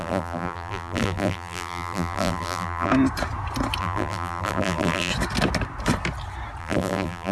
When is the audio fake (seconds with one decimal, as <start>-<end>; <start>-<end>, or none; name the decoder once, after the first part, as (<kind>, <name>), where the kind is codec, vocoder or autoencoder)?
0.0-2.9 (vocoder, BigVGAN v2); 3.8-5.1; 6.6-7.3